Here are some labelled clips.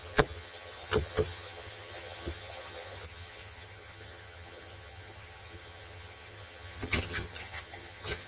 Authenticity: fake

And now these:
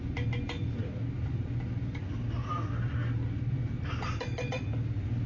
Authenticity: real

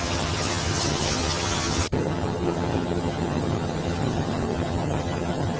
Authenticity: fake